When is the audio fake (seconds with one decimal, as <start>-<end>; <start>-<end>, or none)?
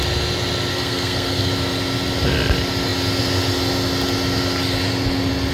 0.7-1.5